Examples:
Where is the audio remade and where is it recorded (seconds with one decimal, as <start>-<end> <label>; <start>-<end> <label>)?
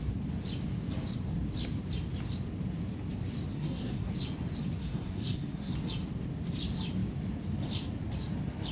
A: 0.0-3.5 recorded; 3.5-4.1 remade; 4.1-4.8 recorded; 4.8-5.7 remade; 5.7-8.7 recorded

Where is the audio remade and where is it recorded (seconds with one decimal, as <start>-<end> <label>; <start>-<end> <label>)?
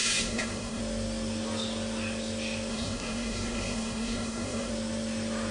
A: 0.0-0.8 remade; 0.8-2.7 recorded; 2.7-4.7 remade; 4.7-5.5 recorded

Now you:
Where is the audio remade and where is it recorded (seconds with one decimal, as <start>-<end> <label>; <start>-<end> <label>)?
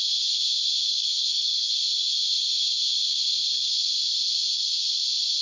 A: 0.0-0.9 recorded; 0.9-1.7 remade; 1.7-5.4 recorded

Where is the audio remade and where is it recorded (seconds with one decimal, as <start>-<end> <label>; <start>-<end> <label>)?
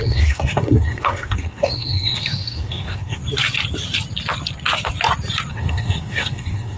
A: 0.0-3.2 remade; 3.2-5.5 recorded; 5.5-6.8 remade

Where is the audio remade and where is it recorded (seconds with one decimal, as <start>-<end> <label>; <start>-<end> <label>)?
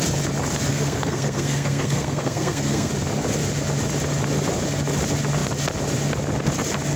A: 0.0-0.7 recorded; 0.7-2.9 remade; 2.9-7.0 recorded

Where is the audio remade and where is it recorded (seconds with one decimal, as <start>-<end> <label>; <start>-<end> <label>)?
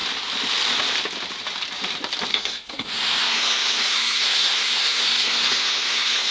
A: 0.0-2.3 recorded; 2.3-6.3 remade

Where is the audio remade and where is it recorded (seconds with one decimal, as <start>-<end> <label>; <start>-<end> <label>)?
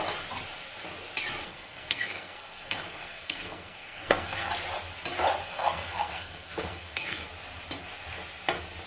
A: 0.0-1.4 recorded; 1.4-4.5 remade; 4.5-5.4 recorded; 5.4-7.3 remade; 7.3-8.9 recorded